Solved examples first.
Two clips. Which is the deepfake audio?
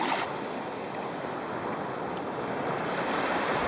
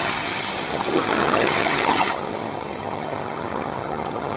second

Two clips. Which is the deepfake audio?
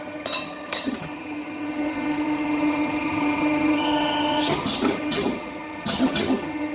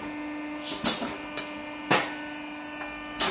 first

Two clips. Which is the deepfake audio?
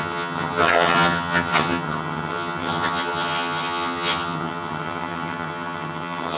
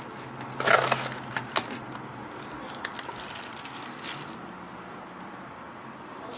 first